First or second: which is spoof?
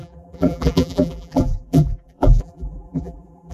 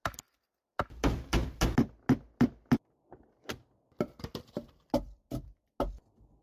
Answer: first